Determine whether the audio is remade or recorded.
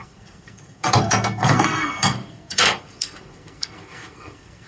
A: remade